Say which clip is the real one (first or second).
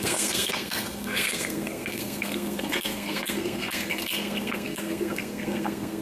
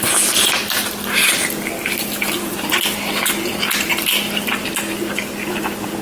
second